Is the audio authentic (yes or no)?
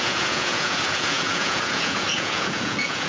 no